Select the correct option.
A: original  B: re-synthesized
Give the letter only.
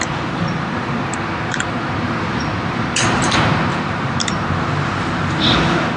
B